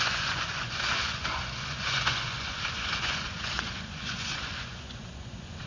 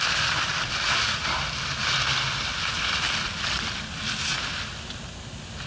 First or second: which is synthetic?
first